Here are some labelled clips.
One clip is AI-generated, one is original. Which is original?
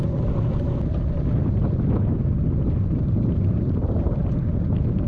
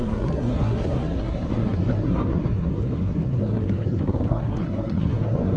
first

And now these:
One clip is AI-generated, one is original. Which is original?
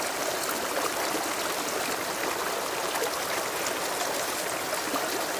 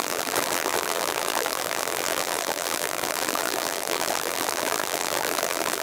first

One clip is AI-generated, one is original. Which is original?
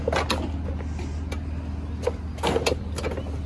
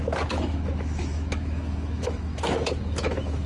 first